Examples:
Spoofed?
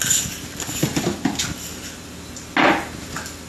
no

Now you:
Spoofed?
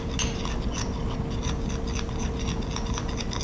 no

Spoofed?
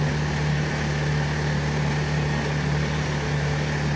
no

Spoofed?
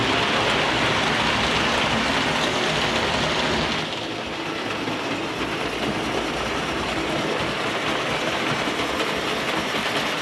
no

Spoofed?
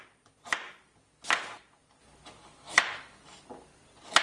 no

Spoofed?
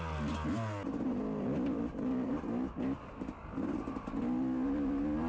no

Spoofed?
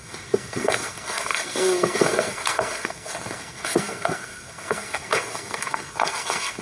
yes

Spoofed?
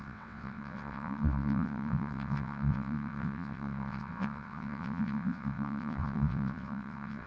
yes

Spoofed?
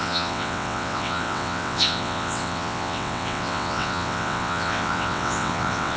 yes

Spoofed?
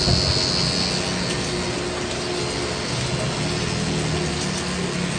no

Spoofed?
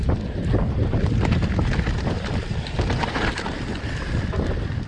no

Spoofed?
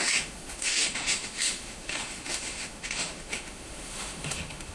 yes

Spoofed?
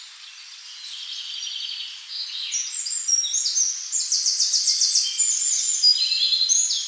no